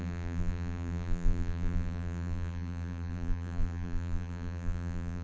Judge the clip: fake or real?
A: fake